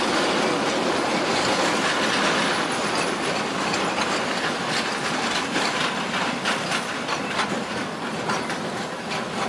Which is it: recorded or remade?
recorded